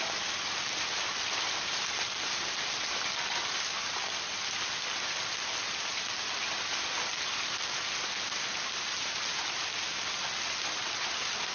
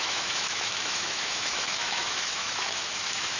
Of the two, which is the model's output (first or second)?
second